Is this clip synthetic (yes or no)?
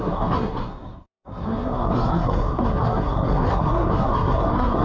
yes